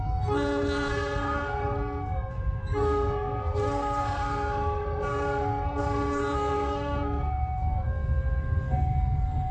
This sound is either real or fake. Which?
fake